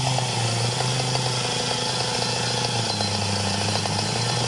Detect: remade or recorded recorded